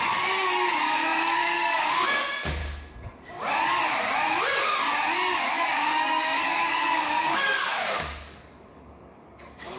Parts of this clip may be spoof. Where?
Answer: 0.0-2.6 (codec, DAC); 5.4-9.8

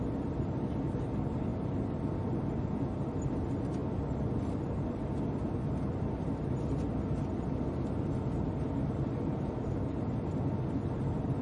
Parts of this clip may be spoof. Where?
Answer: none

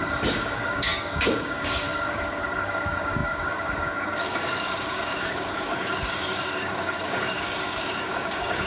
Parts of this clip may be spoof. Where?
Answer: 0.0-8.7 (codec, DAC)

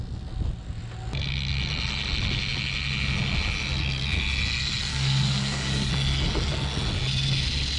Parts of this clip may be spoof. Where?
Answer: 4.9-5.9 (codec, DAC)